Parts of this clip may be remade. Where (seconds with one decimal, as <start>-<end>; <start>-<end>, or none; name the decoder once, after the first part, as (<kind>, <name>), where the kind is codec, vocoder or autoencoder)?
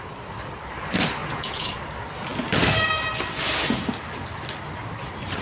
1.2-1.7 (vocoder, Vocos)